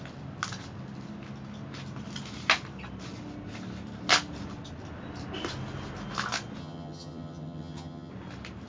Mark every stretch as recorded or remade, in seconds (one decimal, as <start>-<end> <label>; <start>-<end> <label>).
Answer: 0.0-6.6 recorded; 6.6-8.1 remade; 8.1-8.7 recorded